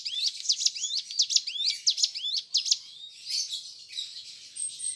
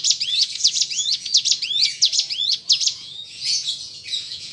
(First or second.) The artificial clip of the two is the second